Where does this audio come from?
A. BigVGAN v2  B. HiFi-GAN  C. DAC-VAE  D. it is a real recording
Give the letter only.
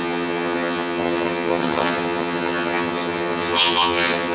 B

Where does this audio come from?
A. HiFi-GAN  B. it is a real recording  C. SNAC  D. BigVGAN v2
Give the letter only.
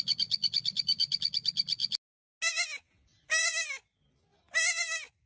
B